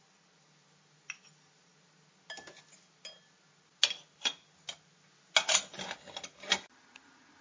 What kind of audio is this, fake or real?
real